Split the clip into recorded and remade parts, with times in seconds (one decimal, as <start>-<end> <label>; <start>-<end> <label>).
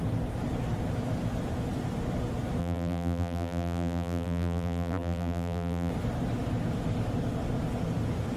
0.0-2.6 recorded; 2.6-5.9 remade; 5.9-8.4 recorded